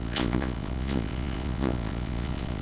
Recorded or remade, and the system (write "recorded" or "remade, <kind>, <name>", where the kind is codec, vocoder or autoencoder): remade, vocoder, Vocos